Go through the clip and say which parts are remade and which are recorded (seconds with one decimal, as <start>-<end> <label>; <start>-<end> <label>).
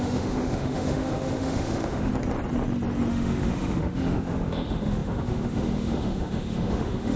0.0-2.1 remade; 2.1-3.1 recorded; 3.1-7.2 remade